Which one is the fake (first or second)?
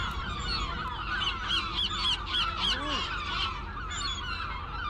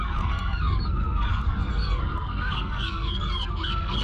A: second